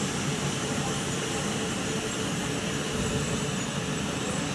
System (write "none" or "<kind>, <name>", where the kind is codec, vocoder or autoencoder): none